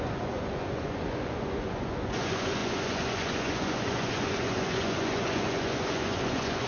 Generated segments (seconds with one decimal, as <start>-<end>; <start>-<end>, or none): 0.0-6.7